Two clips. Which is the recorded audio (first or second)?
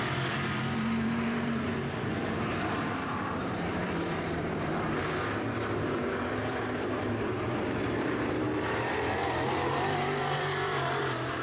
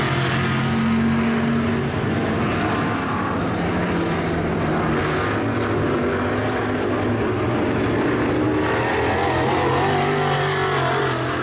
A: second